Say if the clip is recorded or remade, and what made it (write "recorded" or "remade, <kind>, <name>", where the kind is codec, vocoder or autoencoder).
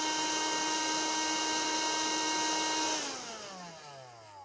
recorded